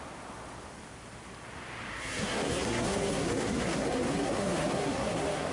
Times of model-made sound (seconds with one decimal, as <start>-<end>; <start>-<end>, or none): 1.9-5.5